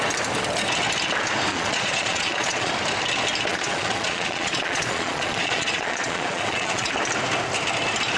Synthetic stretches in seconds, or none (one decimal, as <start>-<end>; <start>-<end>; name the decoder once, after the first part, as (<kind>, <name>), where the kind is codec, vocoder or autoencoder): 1.5-2.7 (vocoder, Vocos); 3.5-6.9